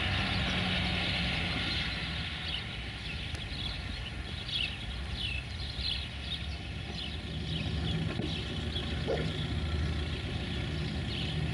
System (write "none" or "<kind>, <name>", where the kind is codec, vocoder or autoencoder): none